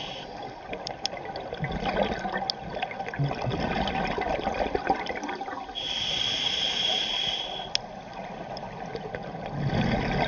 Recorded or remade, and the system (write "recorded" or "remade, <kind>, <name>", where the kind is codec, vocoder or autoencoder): recorded